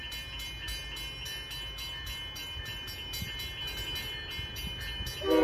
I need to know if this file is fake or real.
real